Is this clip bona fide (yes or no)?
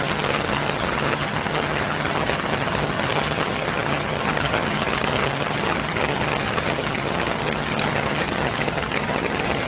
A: no